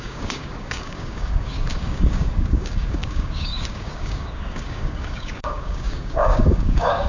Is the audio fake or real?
fake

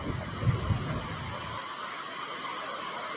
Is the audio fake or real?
real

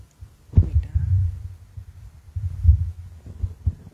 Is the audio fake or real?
real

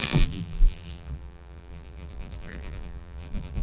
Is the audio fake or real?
fake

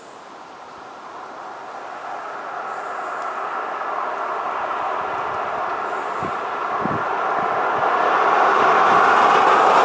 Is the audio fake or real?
real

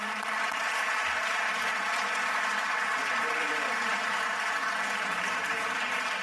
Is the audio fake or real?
real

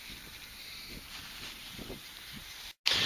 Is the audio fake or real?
real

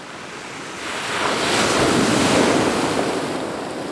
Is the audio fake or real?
real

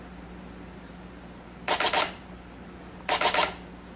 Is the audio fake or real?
real